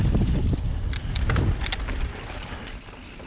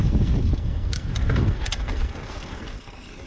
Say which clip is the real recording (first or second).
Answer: first